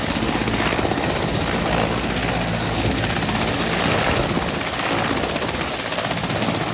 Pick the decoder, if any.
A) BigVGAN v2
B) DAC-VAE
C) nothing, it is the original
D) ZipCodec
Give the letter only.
C